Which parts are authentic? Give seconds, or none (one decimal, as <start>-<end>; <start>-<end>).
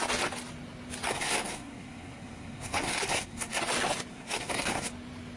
0.0-1.1; 3.6-4.1; 4.9-5.4